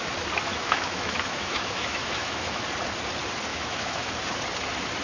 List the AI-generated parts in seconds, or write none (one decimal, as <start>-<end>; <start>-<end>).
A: 0.5-2.6; 3.5-4.1

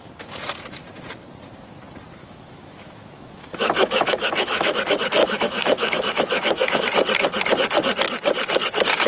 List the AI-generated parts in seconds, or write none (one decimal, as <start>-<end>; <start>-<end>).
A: 2.2-4.8; 5.2-6.8

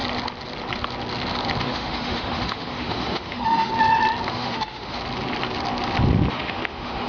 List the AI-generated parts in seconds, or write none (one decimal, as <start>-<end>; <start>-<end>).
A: 1.6-3.7; 4.3-5.0; 6.3-7.1

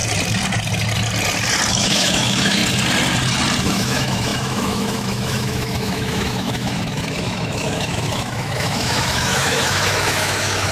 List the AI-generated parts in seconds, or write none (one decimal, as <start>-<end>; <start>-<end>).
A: 1.7-2.6; 3.6-10.7

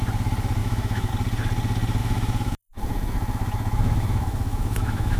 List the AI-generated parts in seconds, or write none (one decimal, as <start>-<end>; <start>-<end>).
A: 0.6-1.1; 2.0-5.2